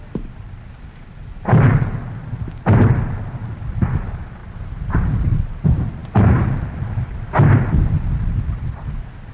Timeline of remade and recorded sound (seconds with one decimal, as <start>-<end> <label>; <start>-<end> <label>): 0.0-9.3 recorded

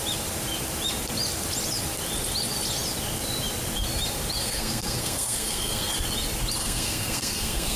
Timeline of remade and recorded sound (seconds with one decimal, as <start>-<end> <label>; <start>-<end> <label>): 0.0-4.4 recorded; 4.4-5.9 remade; 5.9-6.6 recorded; 6.6-7.8 remade

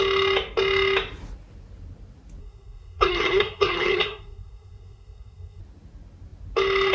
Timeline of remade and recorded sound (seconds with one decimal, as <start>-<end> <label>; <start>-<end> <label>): 0.0-2.4 recorded; 2.4-5.6 remade; 5.6-6.9 recorded

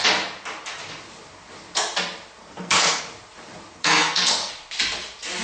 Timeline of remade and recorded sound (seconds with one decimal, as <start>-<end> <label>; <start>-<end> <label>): 0.0-2.4 recorded; 2.4-3.0 remade; 3.0-3.8 recorded; 3.8-4.5 remade; 4.5-5.4 recorded

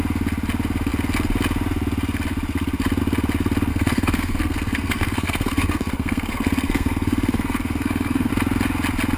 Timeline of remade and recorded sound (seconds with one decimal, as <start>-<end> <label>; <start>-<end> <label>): 0.0-3.7 recorded; 3.7-8.3 remade; 8.3-9.2 recorded

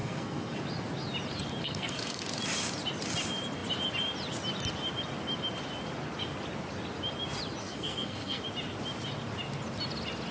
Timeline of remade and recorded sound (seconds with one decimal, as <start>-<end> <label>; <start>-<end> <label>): 0.0-0.6 remade; 0.6-1.6 recorded; 1.6-2.2 remade; 2.2-7.6 recorded; 7.6-8.4 remade; 8.4-10.3 recorded